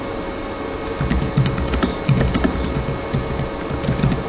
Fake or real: real